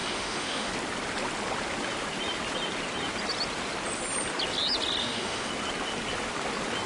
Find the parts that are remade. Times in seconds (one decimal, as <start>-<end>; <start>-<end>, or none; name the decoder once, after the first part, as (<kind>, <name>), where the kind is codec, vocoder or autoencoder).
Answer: 0.0-0.7 (autoencoder, DAC-VAE); 5.0-5.5